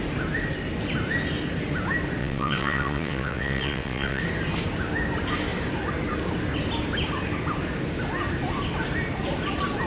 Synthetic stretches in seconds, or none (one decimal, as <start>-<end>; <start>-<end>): 2.2-4.2